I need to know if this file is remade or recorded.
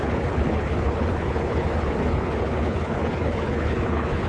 remade